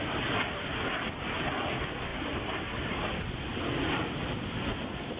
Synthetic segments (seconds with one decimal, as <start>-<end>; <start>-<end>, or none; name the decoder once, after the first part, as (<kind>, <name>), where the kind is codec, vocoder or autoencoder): 2.1-3.6 (vocoder, BigVGAN v2)